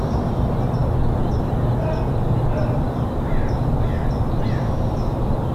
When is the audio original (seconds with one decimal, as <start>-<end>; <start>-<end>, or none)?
0.0-5.5